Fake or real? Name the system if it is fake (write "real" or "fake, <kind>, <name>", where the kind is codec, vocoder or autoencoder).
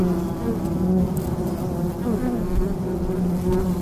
real